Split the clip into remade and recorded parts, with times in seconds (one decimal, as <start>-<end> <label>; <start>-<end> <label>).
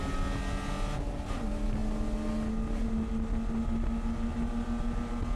0.0-5.4 recorded